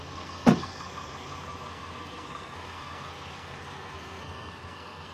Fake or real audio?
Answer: fake